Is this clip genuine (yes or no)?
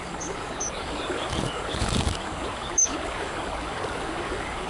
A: no